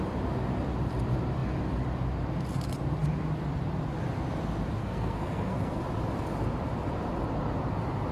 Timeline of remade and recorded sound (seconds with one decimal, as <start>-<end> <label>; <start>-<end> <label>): 0.0-4.8 recorded; 4.8-5.8 remade; 5.8-8.1 recorded

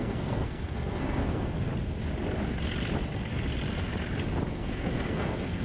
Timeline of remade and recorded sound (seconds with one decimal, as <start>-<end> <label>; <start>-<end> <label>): 0.0-1.7 remade; 1.7-4.5 recorded; 4.5-5.6 remade

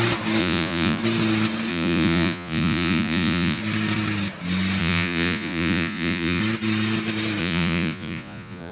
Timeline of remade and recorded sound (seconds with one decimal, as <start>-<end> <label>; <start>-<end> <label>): 0.0-0.4 recorded; 0.4-1.0 remade; 1.0-1.7 recorded; 1.7-3.6 remade; 3.6-4.8 recorded; 4.8-6.4 remade; 6.4-7.4 recorded; 7.4-8.7 remade